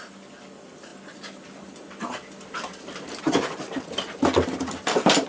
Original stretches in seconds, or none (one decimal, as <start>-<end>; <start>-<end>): 0.0-5.3